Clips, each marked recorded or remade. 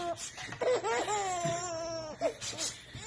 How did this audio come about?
recorded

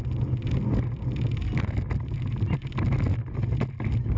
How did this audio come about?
recorded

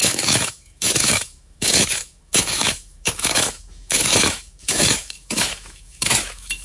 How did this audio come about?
remade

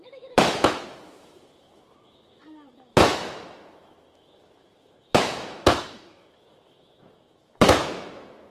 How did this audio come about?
remade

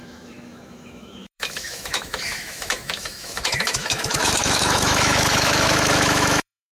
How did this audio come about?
remade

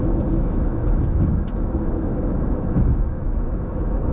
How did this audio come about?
remade